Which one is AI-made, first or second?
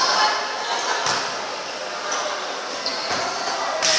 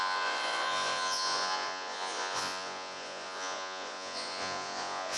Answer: second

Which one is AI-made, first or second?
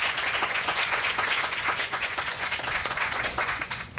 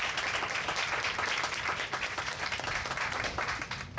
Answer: first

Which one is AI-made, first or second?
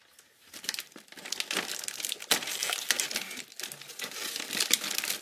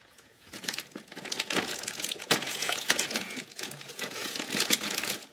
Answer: second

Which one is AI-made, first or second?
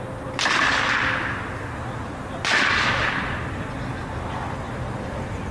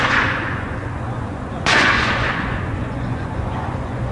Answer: second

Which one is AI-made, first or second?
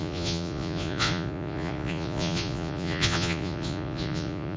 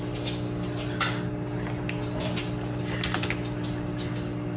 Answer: first